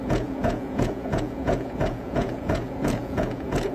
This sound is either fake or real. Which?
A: fake